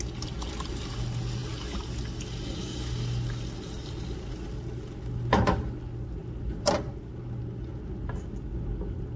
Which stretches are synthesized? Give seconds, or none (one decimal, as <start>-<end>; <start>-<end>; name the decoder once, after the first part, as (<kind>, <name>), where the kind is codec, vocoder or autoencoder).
none